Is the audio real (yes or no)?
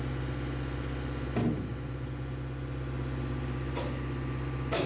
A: yes